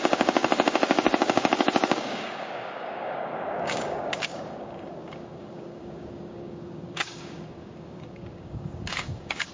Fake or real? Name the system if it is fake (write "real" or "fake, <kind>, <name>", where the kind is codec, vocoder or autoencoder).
fake, codec, DAC